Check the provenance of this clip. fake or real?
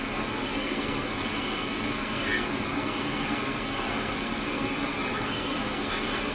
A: fake